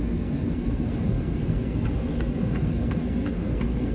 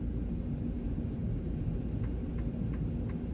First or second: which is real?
second